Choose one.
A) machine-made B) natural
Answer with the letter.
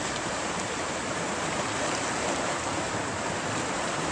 A